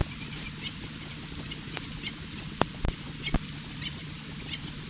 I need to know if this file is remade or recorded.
recorded